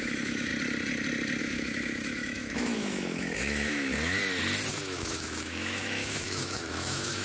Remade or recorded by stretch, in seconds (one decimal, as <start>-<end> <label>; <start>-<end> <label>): 0.0-0.5 remade; 0.5-1.4 recorded; 1.4-4.2 remade; 4.2-4.7 recorded; 4.7-7.2 remade